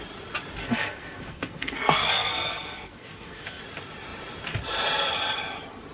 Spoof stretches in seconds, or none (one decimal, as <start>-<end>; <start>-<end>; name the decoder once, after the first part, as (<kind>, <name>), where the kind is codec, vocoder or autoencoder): 0.6-3.6 (codec, SNAC)